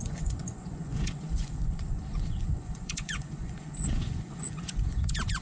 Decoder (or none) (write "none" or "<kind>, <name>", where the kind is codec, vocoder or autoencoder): vocoder, Vocos